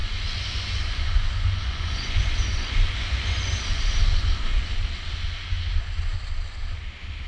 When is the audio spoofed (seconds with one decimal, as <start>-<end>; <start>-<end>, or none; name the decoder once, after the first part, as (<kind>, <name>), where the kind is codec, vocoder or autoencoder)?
0.0-4.4 (vocoder, Vocos)